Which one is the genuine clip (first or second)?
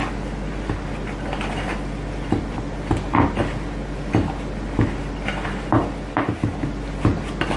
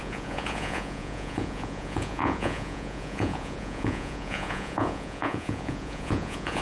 first